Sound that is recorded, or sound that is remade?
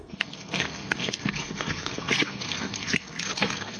remade